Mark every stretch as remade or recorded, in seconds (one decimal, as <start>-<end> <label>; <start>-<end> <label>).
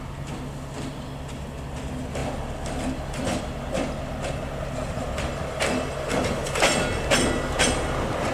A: 0.0-8.3 recorded